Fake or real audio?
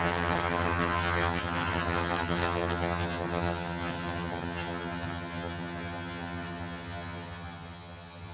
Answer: fake